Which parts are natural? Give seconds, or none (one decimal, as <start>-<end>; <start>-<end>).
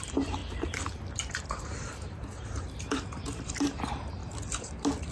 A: 4.2-5.1